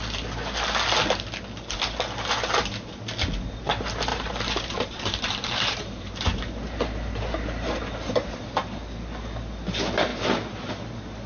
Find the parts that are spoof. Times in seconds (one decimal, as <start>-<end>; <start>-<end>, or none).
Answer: 4.1-8.3; 10.1-10.7